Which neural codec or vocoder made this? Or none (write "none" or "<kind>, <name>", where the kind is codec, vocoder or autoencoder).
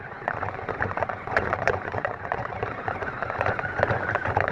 vocoder, Vocos